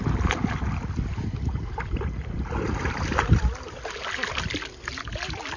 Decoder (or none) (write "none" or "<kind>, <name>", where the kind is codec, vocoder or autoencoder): none